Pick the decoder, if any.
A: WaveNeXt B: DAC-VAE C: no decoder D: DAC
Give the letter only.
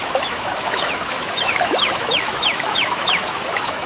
B